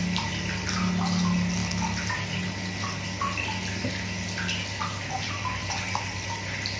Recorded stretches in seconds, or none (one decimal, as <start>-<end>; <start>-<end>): 0.0-6.8